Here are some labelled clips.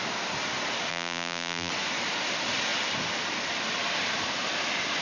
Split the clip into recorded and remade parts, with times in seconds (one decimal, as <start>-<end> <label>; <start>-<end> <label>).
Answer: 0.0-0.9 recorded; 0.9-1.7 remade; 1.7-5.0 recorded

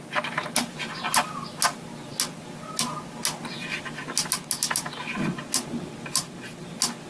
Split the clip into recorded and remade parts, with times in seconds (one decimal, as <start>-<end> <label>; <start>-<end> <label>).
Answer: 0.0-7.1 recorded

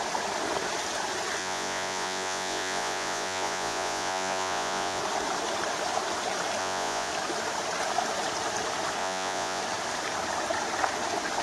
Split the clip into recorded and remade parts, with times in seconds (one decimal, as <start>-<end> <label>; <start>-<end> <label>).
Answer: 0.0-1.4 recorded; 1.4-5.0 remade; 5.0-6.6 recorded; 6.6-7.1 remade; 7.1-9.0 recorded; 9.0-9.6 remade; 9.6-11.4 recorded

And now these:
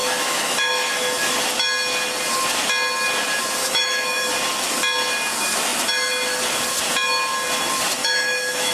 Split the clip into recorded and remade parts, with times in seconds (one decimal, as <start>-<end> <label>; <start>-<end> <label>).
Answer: 0.0-1.3 remade; 1.3-3.6 recorded; 3.6-4.3 remade; 4.3-8.0 recorded; 8.0-8.7 remade

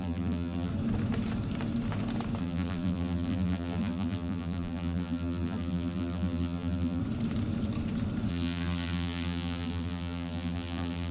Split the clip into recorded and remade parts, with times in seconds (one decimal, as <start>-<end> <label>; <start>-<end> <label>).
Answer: 0.0-0.7 remade; 0.7-2.4 recorded; 2.4-7.0 remade; 7.0-8.3 recorded; 8.3-11.1 remade

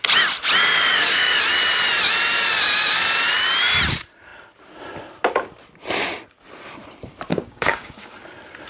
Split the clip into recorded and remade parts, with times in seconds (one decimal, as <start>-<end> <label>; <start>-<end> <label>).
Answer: 0.0-0.9 recorded; 0.9-1.4 remade; 1.4-7.3 recorded; 7.3-8.2 remade; 8.2-8.7 recorded

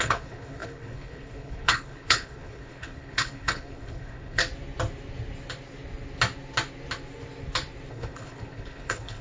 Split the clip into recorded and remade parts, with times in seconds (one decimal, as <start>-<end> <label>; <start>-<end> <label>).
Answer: 0.0-4.4 remade; 4.4-7.9 recorded; 7.9-9.2 remade

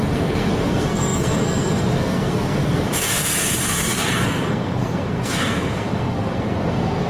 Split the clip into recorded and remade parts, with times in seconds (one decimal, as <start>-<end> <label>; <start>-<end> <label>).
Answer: 0.0-7.1 remade